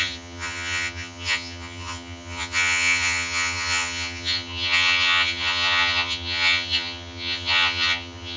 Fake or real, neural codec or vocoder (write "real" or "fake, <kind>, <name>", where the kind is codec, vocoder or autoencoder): fake, vocoder, HiFi-GAN